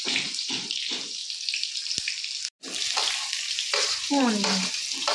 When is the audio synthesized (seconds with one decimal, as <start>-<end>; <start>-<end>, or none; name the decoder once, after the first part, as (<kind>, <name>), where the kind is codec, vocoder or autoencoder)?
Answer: 0.0-1.2 (vocoder, BigVGAN v2); 3.5-5.1